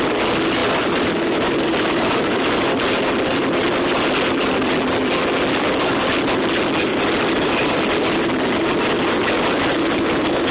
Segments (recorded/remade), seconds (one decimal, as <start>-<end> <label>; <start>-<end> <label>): 0.0-0.6 recorded; 0.6-4.0 remade; 4.0-6.9 recorded; 6.9-8.0 remade; 8.0-10.5 recorded